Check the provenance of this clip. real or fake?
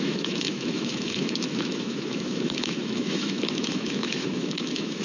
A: fake